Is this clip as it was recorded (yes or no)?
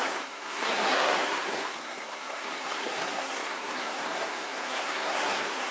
no